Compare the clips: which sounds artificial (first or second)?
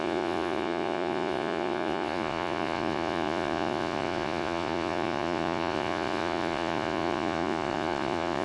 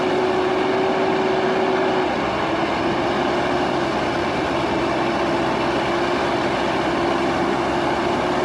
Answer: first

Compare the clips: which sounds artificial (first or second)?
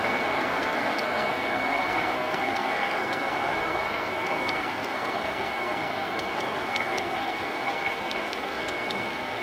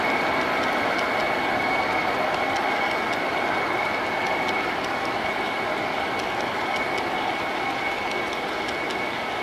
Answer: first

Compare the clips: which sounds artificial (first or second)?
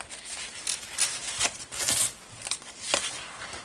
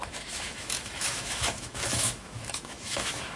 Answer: second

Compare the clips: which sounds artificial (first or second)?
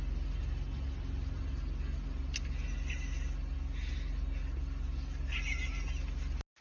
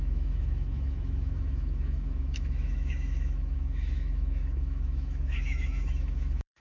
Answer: second